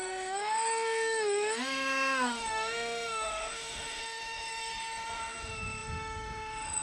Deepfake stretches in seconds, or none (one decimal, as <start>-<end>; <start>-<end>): 0.0-6.8